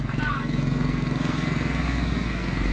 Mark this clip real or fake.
fake